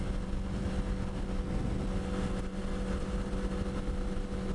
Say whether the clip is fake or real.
real